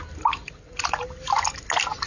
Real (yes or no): yes